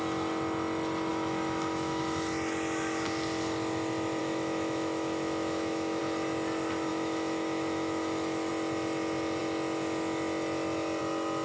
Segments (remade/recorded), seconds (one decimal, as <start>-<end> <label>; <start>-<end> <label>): 0.0-1.1 recorded; 1.1-2.0 remade; 2.0-4.2 recorded; 4.2-6.0 remade; 6.0-6.9 recorded; 6.9-8.5 remade; 8.5-11.4 recorded